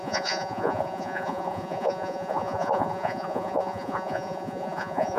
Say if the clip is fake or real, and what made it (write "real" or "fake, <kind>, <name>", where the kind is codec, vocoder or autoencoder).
fake, vocoder, Vocos